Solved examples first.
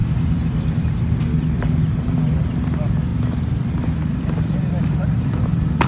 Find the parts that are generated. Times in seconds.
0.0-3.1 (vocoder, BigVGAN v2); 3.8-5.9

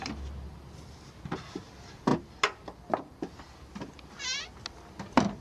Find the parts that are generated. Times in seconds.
none